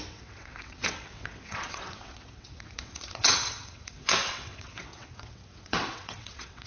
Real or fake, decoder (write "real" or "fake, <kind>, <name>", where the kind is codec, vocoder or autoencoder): fake, vocoder, WaveNeXt